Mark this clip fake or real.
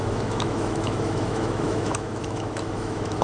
fake